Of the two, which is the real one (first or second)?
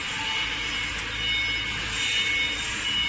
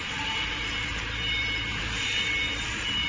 first